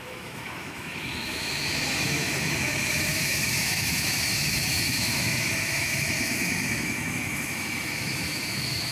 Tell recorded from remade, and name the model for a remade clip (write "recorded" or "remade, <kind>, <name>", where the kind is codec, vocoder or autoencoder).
remade, autoencoder, DAC-VAE